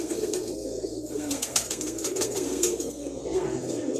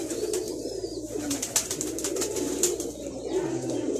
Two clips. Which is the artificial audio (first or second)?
first